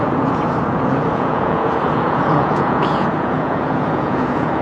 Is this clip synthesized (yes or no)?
yes